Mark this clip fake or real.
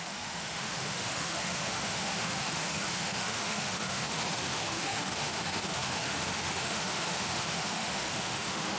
fake